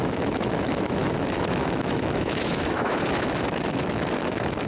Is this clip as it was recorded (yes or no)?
no